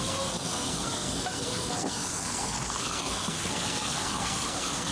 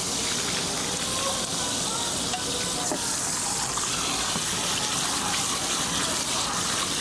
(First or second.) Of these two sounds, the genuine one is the second